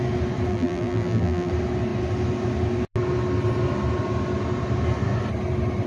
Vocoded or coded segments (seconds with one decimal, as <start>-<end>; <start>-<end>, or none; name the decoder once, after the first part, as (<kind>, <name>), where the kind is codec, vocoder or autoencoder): 0.5-1.5 (vocoder, BigVGAN v2)